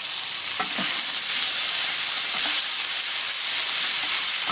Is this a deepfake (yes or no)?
no